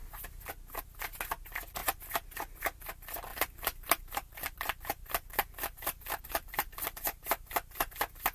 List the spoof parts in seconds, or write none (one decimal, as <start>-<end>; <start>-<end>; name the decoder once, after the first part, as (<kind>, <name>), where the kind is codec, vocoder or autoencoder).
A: 3.3-7.9 (vocoder, BigVGAN v2)